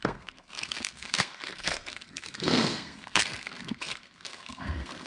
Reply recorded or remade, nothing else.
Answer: remade